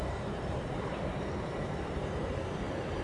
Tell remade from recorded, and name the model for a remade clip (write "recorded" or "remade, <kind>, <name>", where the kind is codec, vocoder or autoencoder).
remade, vocoder, BigVGAN v2